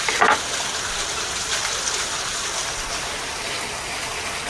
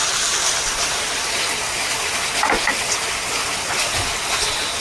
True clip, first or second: second